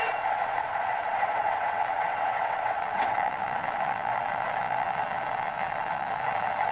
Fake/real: fake